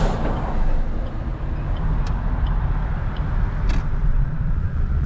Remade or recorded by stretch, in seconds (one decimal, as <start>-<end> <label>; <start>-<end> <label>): 0.0-4.1 recorded; 4.1-5.1 remade